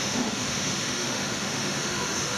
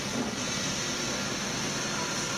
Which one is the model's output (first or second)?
first